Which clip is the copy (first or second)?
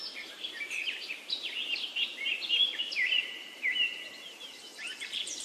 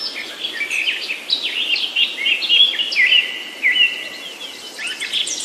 first